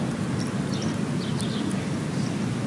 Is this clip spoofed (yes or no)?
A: no